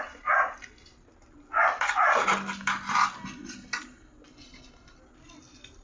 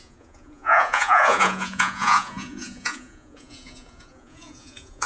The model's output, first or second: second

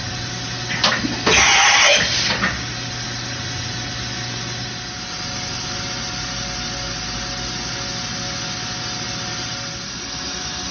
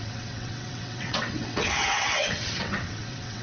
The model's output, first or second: second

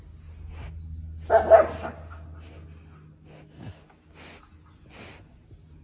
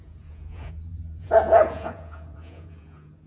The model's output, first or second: second